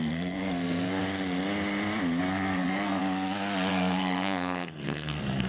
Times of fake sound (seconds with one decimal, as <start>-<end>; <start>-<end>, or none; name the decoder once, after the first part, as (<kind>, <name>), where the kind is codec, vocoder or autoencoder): 0.0-1.0 (codec, SNAC); 2.2-3.0; 3.7-5.5